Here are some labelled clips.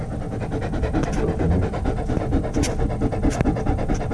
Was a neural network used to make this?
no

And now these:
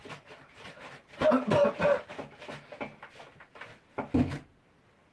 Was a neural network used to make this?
no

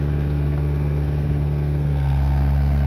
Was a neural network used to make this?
yes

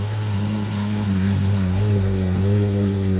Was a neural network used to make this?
yes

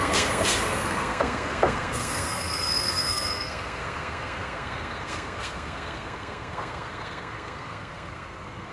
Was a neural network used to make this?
yes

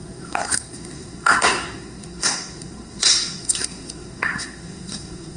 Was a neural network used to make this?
yes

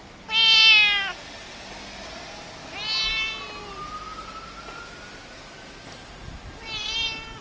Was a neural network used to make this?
no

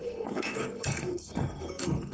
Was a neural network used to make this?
yes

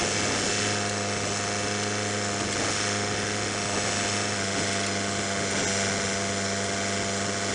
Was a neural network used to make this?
no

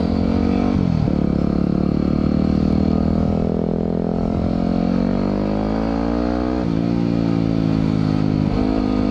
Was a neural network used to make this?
no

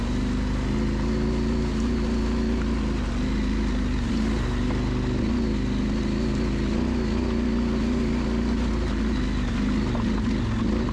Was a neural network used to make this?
no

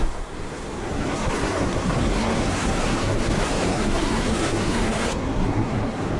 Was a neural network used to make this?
yes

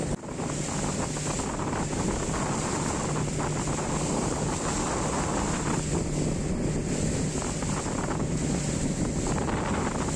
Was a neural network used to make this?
no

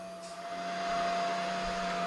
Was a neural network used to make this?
no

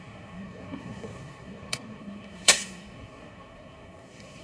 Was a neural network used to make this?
yes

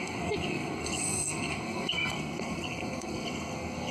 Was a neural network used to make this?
yes